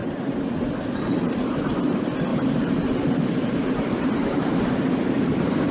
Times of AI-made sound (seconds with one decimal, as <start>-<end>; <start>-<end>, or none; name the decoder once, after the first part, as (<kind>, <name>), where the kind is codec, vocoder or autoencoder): 2.3-4.6 (vocoder, BigVGAN v2)